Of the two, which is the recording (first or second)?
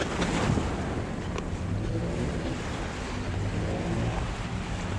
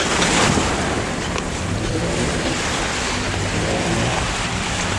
first